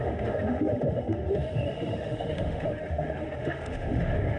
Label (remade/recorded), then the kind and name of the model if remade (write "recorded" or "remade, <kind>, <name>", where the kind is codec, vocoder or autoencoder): remade, autoencoder, DAC-VAE